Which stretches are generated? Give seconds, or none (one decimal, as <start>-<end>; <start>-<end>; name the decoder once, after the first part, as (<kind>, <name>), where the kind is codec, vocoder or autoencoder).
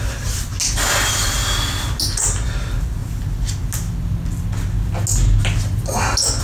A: none